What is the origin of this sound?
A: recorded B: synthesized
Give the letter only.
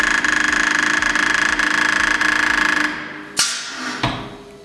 A